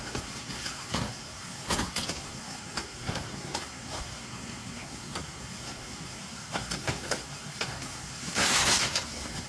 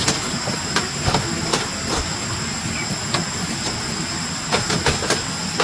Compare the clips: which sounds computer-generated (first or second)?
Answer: first